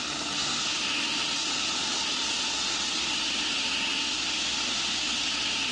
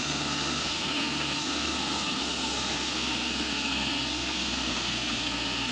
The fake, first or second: second